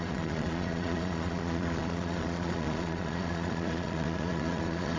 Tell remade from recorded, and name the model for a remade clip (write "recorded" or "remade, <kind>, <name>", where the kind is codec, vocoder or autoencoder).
remade, vocoder, Vocos